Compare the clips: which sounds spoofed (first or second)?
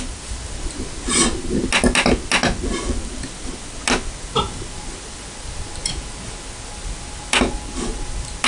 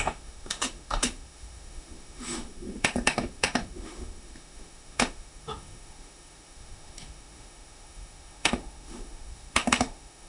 second